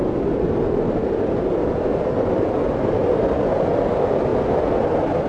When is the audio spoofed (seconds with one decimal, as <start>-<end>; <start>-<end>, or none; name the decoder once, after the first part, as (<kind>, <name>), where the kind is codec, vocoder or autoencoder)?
none